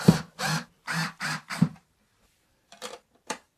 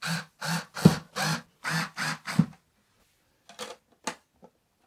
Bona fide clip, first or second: second